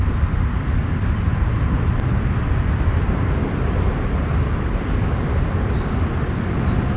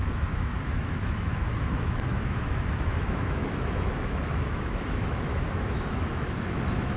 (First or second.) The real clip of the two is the first